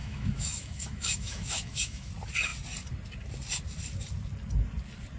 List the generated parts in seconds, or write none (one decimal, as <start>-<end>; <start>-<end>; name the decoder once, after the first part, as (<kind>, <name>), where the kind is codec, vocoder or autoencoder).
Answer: 0.0-2.1 (autoencoder, DAC-VAE)